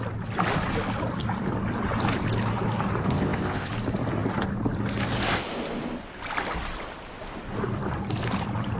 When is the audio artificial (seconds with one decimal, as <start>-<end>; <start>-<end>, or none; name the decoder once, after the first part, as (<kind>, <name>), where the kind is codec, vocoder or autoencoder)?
3.0-3.7 (codec, ZipCodec)